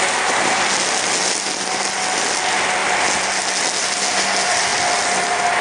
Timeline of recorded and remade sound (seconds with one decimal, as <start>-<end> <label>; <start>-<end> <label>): 0.0-5.6 recorded